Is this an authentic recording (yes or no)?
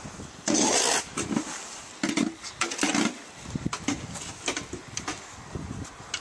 yes